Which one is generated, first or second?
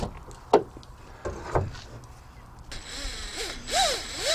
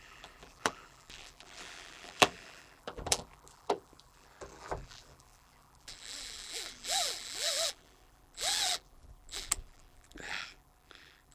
second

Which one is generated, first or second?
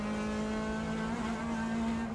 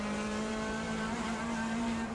second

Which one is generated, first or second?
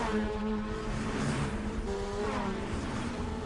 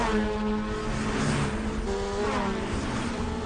first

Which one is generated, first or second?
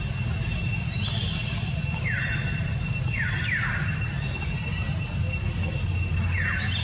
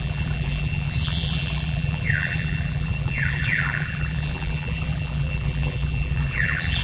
second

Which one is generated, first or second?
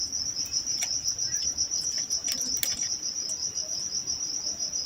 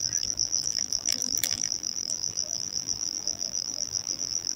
second